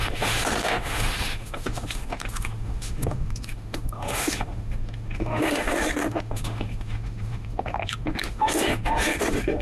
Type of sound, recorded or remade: remade